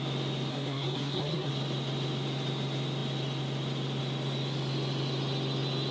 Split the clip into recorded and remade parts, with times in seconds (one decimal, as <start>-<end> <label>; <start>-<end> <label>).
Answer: 0.0-0.5 recorded; 0.5-1.5 remade; 1.5-5.9 recorded